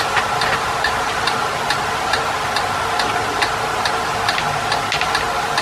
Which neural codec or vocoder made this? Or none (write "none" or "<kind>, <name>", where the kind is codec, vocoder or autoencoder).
none